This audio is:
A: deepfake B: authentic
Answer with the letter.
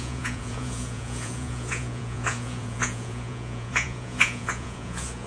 A